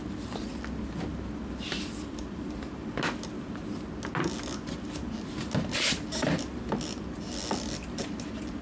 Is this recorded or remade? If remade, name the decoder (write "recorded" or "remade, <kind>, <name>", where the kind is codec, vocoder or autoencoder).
recorded